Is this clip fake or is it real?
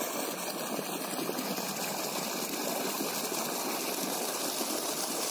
real